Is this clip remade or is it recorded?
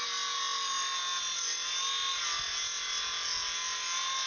recorded